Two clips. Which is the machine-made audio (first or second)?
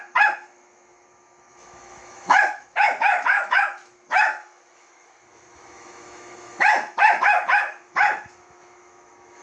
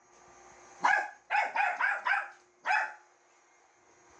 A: first